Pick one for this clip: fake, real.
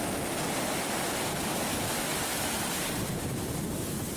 real